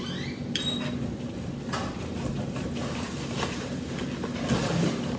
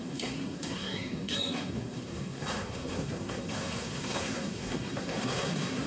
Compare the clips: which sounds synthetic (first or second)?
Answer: second